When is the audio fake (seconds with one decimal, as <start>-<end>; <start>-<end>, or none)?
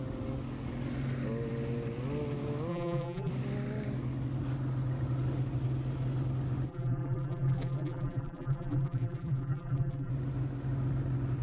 2.7-3.3; 6.7-10.1